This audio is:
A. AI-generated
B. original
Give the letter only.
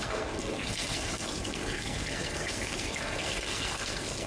A